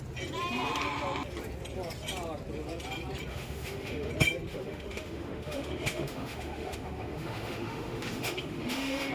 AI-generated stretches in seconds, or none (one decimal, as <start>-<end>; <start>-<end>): 3.3-4.1; 4.5-9.1